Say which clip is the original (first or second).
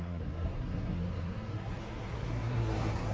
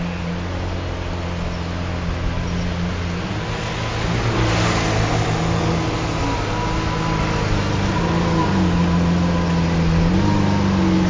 second